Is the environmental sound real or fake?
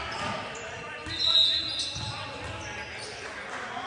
real